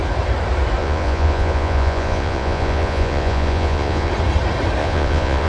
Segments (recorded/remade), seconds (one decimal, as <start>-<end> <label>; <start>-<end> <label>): 0.0-0.8 recorded; 0.8-4.1 remade; 4.1-4.8 recorded; 4.8-5.5 remade